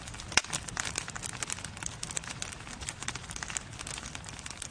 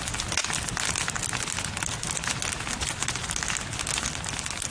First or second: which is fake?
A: first